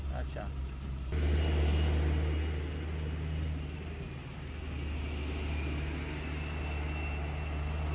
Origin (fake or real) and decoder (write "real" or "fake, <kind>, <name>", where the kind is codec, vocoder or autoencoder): real